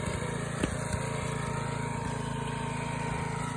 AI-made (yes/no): no